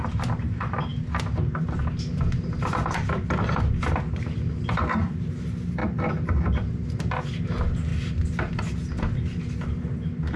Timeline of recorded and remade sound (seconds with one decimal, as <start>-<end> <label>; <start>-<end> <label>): 0.0-7.9 recorded; 7.9-8.5 remade; 8.5-10.4 recorded